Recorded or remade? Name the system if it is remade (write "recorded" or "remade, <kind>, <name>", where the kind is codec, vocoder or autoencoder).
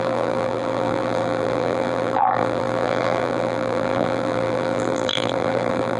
remade, vocoder, BigVGAN v2